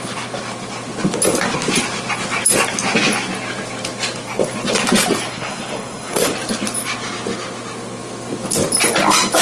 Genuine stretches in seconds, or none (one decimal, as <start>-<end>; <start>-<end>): 0.0-5.3; 6.3-9.4